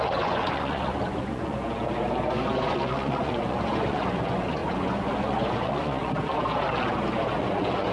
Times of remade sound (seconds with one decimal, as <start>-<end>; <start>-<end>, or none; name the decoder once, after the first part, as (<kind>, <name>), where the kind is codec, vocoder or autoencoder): 0.0-1.6 (vocoder, Vocos); 2.7-6.3; 7.4-7.9

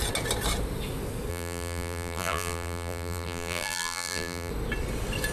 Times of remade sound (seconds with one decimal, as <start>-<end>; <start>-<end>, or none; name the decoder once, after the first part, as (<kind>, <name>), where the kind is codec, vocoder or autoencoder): 1.3-4.5 (vocoder, BigVGAN v2)

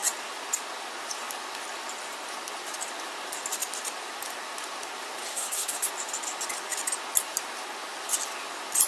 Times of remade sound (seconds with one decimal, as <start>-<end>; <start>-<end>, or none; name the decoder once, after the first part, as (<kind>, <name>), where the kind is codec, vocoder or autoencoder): 5.3-5.9 (codec, SNAC)